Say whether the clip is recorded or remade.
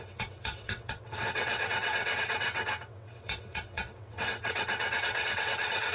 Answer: remade